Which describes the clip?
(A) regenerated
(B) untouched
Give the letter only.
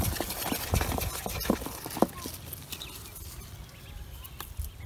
B